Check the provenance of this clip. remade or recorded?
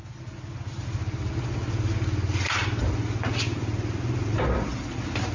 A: recorded